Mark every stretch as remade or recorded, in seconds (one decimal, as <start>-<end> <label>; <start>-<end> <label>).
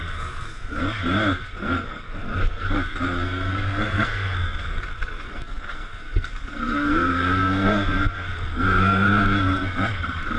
0.0-10.4 remade